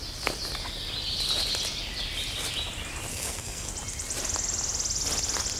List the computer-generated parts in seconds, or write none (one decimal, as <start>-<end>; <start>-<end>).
3.1-3.7